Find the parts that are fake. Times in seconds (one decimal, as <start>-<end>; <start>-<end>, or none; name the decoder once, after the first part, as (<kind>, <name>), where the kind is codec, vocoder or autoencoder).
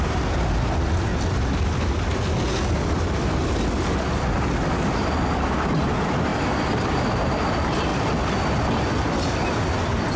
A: none